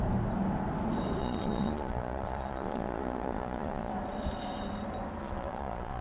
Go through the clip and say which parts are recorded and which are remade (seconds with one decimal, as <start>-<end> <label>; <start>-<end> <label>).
0.0-1.2 recorded; 1.2-3.9 remade; 3.9-5.2 recorded; 5.2-6.0 remade